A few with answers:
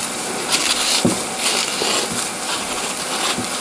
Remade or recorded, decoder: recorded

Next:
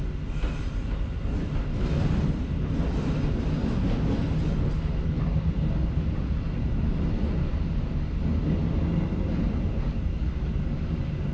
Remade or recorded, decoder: recorded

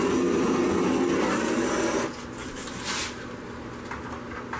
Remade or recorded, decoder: recorded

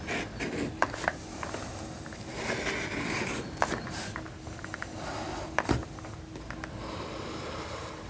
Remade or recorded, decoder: recorded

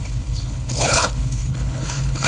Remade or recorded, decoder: remade, codec, HILCodec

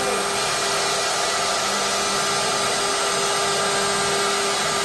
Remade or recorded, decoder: recorded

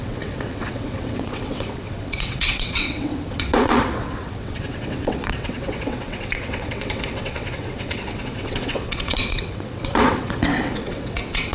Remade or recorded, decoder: remade, vocoder, WaveNeXt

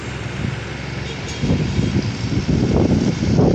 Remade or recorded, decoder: recorded